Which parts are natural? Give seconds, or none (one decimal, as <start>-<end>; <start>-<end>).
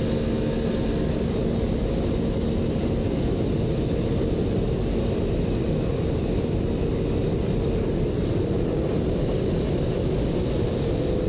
0.0-7.2; 9.3-11.3